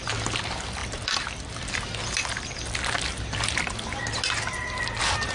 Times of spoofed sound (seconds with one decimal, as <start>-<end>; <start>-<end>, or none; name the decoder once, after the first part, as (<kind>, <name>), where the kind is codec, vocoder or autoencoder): 0.8-1.7 (vocoder, BigVGAN v2)